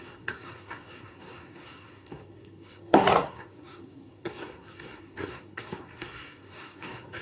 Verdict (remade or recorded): remade